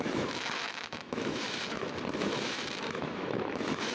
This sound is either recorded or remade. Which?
remade